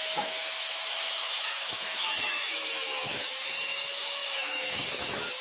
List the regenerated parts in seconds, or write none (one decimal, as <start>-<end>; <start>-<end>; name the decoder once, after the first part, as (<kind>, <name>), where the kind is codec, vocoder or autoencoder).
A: 0.0-5.4 (autoencoder, DAC-VAE)